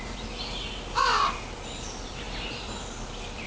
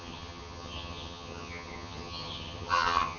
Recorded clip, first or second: first